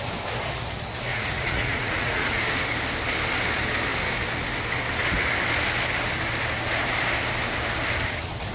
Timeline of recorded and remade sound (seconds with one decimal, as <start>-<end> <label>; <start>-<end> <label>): 0.0-1.1 recorded; 1.1-2.4 remade; 2.4-8.5 recorded